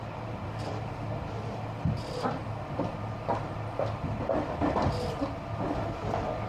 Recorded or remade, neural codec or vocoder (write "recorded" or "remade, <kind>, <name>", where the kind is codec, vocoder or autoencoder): recorded